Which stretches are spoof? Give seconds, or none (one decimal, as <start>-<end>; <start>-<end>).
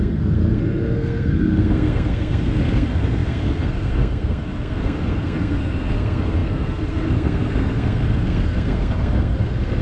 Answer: 0.0-9.8